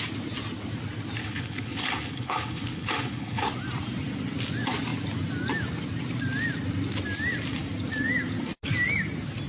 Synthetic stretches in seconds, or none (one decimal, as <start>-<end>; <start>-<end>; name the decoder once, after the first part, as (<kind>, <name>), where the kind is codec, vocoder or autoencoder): 1.2-3.5 (codec, HILCodec)